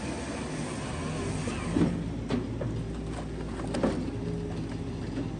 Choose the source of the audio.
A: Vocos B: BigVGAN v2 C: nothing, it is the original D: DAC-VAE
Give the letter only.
C